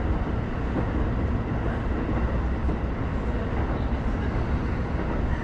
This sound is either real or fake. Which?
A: real